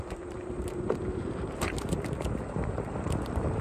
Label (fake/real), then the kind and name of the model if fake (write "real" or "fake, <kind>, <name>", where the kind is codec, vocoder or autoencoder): fake, vocoder, BigVGAN v2